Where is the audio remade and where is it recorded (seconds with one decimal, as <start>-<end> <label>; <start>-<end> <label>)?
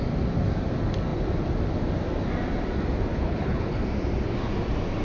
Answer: 0.0-3.1 recorded; 3.1-3.8 remade; 3.8-5.0 recorded